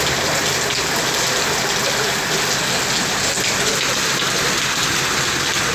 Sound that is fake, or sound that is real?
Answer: real